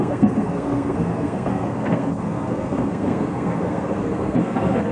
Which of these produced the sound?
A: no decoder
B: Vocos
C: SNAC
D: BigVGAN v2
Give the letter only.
C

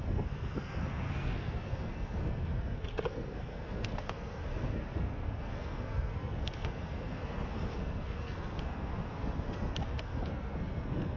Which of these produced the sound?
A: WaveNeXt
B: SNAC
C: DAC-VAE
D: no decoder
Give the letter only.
B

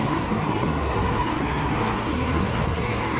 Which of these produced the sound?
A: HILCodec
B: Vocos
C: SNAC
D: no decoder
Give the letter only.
C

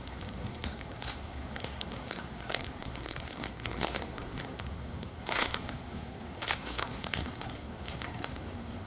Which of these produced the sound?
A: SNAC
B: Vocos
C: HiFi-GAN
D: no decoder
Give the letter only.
A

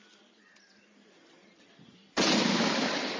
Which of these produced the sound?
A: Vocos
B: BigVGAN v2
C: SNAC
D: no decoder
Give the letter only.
D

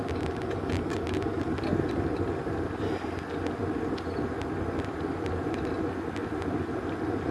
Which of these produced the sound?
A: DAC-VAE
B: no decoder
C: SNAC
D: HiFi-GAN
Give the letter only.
B